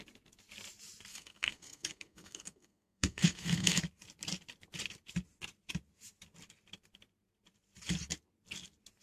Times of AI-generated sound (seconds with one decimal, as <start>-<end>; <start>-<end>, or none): 1.1-3.8